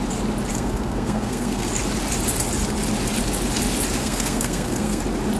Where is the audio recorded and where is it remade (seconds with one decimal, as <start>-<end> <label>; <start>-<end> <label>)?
0.0-0.5 recorded; 0.5-1.7 remade; 1.7-4.0 recorded; 4.0-5.0 remade; 5.0-5.4 recorded